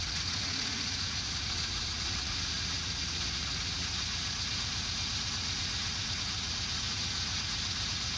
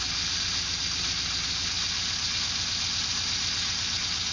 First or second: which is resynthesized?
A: first